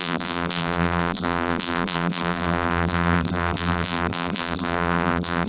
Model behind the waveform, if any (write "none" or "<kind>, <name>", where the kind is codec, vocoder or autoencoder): vocoder, BigVGAN v2